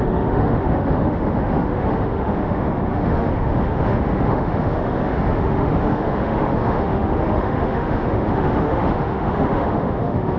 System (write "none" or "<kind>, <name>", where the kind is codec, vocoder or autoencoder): autoencoder, DAC-VAE